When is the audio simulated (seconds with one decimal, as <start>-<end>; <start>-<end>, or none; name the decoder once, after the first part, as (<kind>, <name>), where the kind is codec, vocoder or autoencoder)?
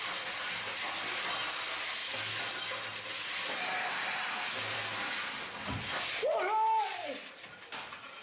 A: none